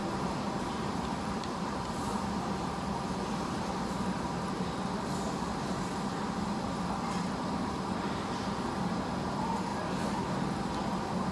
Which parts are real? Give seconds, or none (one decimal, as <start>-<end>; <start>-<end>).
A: 4.7-11.3